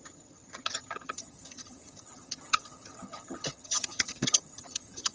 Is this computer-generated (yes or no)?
yes